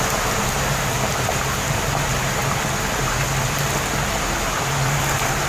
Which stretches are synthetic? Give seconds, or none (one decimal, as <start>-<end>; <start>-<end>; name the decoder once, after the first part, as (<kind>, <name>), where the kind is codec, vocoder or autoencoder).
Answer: 0.0-2.4 (vocoder, BigVGAN v2); 3.0-5.5